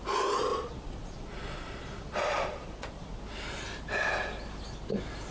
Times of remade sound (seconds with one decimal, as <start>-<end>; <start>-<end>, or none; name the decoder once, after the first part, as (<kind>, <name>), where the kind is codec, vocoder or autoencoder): 0.5-3.2 (vocoder, Vocos)